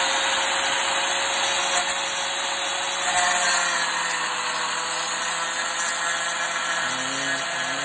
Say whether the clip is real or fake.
real